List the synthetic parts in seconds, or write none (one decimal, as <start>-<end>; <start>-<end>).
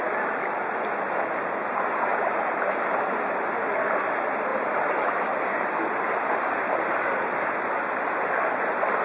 2.1-2.7; 4.5-5.9